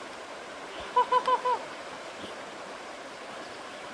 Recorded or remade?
remade